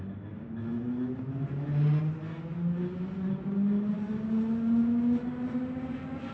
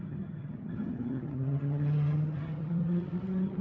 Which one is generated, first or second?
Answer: second